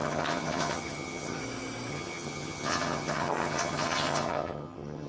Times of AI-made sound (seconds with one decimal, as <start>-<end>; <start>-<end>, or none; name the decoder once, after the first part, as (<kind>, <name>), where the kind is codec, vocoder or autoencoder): 0.0-1.4 (vocoder, HiFi-GAN); 1.9-5.1